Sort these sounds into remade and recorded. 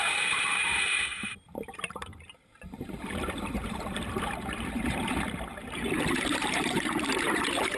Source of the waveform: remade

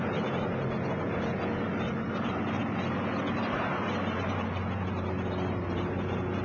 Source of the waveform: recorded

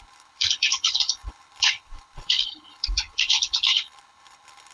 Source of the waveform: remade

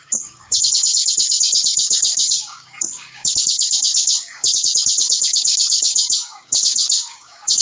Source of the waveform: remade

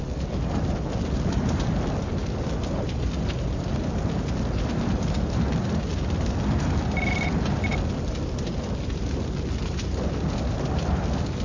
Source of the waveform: recorded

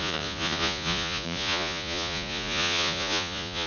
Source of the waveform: remade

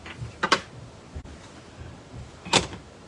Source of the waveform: recorded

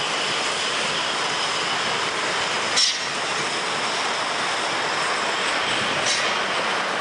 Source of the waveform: recorded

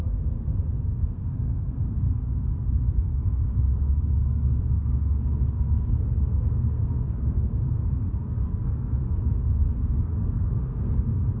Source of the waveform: remade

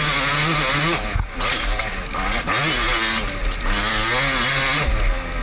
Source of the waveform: recorded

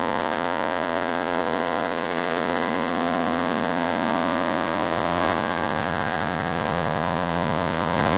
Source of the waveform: remade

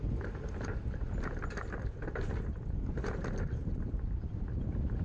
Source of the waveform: recorded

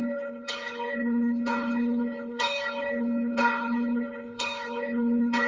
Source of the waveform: remade